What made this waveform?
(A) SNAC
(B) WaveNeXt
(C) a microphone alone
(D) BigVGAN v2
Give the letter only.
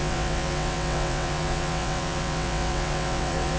B